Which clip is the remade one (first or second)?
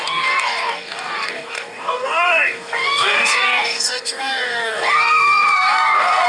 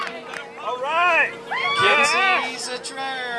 first